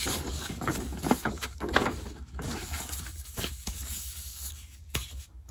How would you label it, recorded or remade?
remade